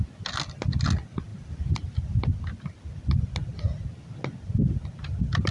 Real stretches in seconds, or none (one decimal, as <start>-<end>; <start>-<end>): 0.0-5.5